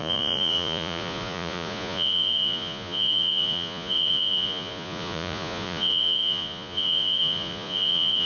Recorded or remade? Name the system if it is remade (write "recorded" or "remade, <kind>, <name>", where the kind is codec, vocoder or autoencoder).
remade, vocoder, Vocos